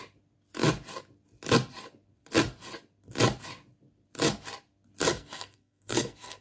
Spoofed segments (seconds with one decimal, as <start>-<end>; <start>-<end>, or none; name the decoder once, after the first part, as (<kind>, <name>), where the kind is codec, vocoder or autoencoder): 5.1-6.4 (codec, SNAC)